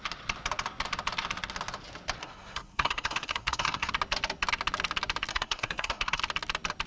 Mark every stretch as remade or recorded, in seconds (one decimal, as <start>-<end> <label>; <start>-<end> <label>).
0.0-2.2 recorded; 2.2-3.9 remade; 3.9-5.3 recorded; 5.3-6.2 remade; 6.2-6.9 recorded